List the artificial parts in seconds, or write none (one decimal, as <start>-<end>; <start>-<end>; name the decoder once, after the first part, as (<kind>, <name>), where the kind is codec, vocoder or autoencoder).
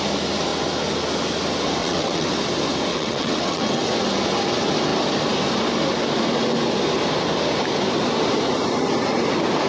1.8-2.3 (vocoder, WaveNeXt); 2.9-3.8